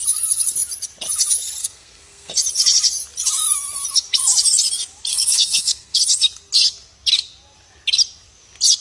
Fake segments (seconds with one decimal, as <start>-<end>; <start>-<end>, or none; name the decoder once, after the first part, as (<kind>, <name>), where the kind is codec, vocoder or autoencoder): 1.6-2.3 (codec, SNAC); 5.1-6.0